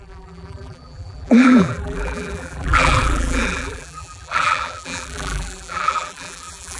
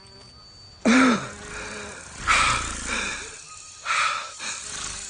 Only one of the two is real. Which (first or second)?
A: second